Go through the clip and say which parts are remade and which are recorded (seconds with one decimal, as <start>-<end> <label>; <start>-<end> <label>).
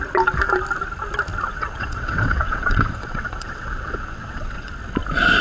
0.0-1.5 recorded; 1.5-4.7 remade; 4.7-5.4 recorded